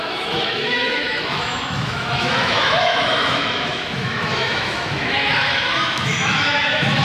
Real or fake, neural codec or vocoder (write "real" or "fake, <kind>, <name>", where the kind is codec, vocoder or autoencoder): fake, autoencoder, DAC-VAE